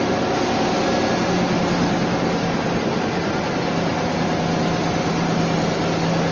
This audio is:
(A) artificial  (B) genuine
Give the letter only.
B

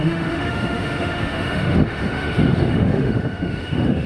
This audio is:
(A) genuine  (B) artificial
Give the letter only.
B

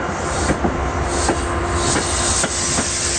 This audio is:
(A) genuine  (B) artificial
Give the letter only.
A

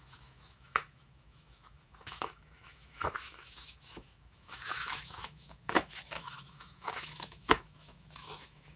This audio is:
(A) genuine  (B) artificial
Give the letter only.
B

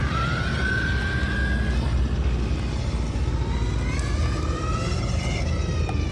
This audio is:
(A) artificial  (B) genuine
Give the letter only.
B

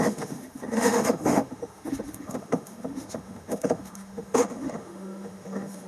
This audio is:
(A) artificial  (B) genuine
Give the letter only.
A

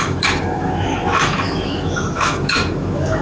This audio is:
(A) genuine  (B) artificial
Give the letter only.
B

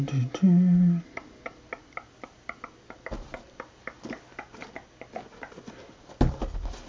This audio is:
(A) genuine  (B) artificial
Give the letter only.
A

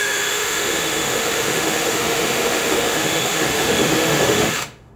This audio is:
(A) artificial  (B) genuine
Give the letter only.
A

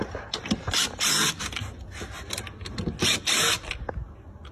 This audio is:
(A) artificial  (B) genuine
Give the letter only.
B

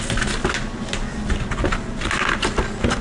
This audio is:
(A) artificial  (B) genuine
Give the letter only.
B